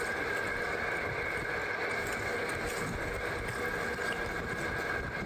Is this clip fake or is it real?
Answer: real